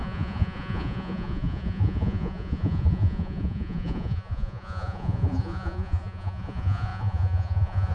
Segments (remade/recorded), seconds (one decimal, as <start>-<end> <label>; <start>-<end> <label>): 0.0-7.9 remade